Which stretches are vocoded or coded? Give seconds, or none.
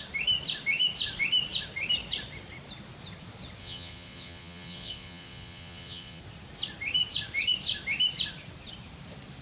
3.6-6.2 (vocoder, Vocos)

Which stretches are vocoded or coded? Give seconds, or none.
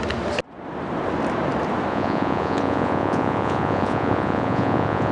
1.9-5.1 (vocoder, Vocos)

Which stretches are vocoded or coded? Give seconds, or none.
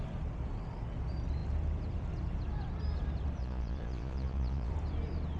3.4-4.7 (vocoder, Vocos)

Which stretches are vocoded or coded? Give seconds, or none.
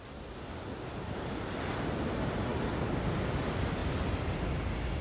none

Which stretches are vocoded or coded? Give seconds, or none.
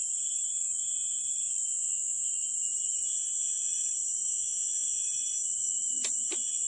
1.7-2.3 (vocoder, Vocos); 3.1-3.7; 4.3-5.0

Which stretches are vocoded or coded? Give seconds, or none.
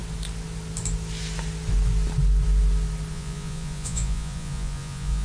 3.1-5.2 (vocoder, Vocos)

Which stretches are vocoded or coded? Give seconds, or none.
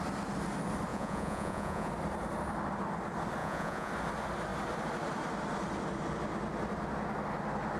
0.9-1.9 (vocoder, Vocos); 3.4-3.9